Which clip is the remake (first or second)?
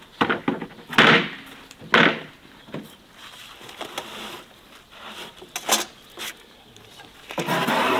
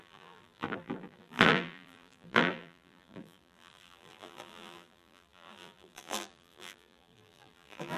second